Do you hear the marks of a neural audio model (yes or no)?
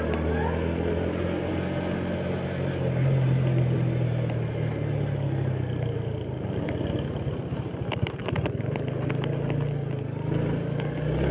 no